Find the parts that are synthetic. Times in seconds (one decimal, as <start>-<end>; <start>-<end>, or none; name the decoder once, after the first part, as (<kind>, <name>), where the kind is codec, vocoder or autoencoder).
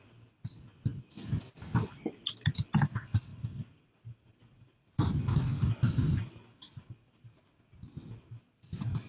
3.3-7.4 (vocoder, BigVGAN v2)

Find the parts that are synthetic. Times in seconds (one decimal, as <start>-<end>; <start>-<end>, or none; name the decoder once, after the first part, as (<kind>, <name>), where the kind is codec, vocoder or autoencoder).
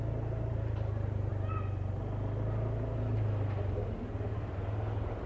0.0-1.3 (vocoder, BigVGAN v2); 4.5-5.3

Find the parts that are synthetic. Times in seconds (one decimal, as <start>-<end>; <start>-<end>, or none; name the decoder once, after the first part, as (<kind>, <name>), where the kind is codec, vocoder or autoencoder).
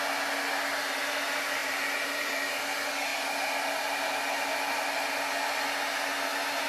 1.6-2.6 (vocoder, BigVGAN v2)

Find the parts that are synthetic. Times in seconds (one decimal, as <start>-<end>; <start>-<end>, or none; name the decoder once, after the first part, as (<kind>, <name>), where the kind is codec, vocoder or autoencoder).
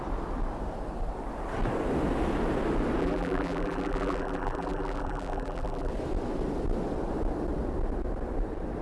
3.0-5.9 (vocoder, BigVGAN v2)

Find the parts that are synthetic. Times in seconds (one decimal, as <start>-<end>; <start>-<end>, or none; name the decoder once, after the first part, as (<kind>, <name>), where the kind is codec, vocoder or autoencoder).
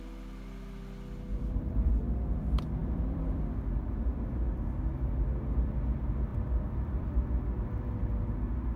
1.3-1.9 (vocoder, BigVGAN v2); 2.8-3.4; 6.3-7.1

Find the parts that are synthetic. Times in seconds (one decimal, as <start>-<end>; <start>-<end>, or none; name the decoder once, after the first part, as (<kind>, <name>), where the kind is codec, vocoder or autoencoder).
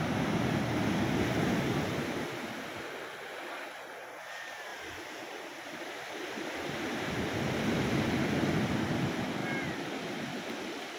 4.7-7.1 (vocoder, BigVGAN v2)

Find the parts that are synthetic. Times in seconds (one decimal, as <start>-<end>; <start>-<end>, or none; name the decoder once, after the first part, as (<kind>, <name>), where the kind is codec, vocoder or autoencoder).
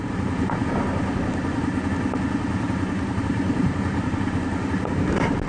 0.0-0.6 (vocoder, BigVGAN v2); 3.2-4.1; 4.7-5.5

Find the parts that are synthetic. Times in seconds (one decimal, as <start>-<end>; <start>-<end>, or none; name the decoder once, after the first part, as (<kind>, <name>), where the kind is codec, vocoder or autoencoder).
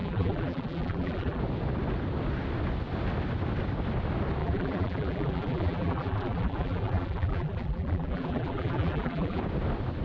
0.0-1.4 (vocoder, BigVGAN v2); 4.4-9.4